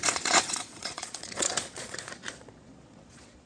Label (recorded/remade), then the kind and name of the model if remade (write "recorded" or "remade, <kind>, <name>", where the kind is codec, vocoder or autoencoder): remade, vocoder, Vocos